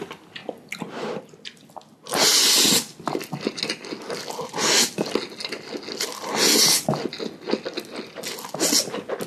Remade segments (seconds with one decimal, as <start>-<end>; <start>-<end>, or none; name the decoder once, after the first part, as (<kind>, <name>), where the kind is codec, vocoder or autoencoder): none